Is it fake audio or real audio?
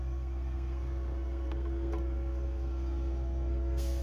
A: fake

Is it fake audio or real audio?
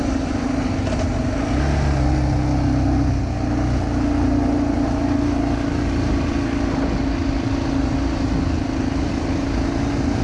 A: real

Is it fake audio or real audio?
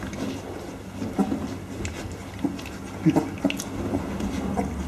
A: real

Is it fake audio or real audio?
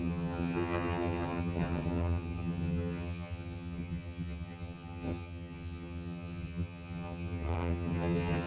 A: fake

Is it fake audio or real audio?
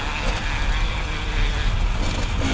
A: real